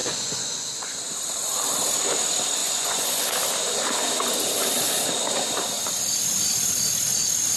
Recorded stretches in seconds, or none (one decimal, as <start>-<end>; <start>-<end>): 1.0-2.6; 3.2-7.6